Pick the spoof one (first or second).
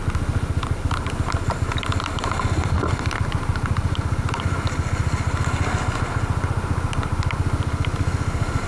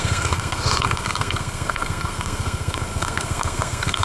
second